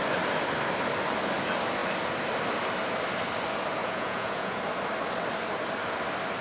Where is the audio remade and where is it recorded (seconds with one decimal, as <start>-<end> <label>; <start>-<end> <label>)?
0.0-3.8 recorded; 3.8-4.6 remade; 4.6-6.4 recorded